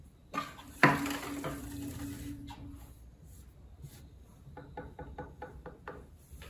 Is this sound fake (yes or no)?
no